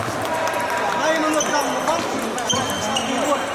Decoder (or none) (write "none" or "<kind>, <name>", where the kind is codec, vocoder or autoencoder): none